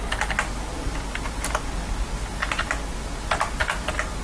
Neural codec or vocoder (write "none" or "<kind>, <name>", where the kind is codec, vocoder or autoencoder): none